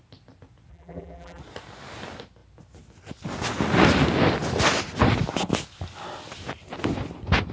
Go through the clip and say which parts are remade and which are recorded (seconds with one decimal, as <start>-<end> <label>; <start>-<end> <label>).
0.0-0.7 recorded; 0.7-1.4 remade; 1.4-7.5 recorded